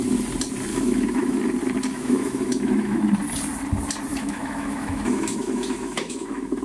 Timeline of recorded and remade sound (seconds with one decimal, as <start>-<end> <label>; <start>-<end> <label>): 0.0-0.7 recorded; 0.7-1.4 remade; 1.4-1.9 recorded; 1.9-3.0 remade; 3.0-4.1 recorded; 4.1-6.6 remade